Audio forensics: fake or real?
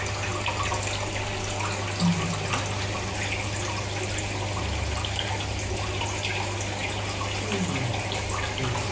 real